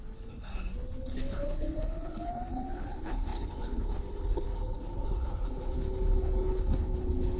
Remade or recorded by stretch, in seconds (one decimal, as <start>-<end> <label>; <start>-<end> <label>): 0.0-7.4 remade